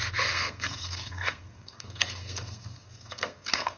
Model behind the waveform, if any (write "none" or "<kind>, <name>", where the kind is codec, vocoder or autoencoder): codec, SNAC